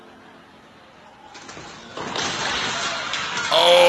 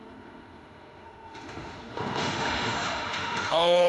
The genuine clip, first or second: first